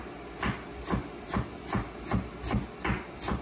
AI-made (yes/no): no